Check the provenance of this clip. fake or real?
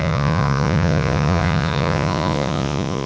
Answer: fake